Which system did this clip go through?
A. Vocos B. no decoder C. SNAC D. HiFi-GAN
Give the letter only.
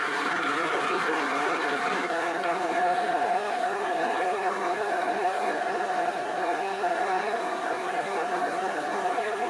C